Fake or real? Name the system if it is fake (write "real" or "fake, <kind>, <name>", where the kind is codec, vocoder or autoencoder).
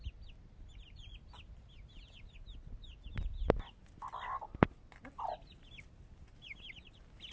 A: real